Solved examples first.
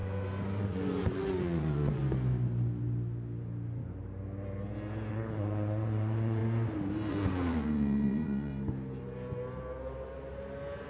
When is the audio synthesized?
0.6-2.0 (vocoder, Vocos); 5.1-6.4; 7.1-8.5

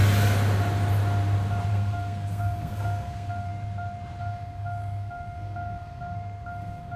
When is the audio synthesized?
1.7-3.5 (codec, SNAC); 4.2-7.0

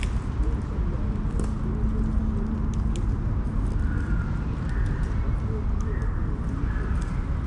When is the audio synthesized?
none

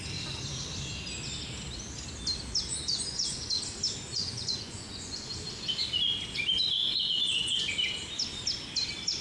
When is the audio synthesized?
2.7-3.6 (vocoder, Vocos); 4.1-5.5; 6.8-7.7

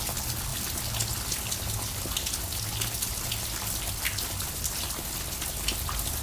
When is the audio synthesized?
none

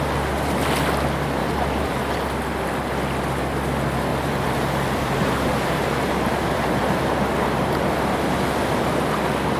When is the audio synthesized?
1.4-2.0 (vocoder, BigVGAN v2); 4.1-7.0

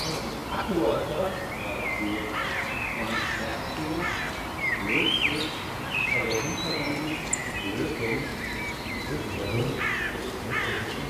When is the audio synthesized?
none

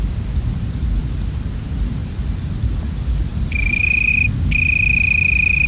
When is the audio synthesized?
1.0-1.5 (vocoder, BigVGAN v2); 2.0-2.9; 3.3-4.1